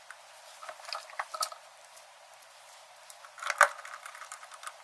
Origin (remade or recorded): remade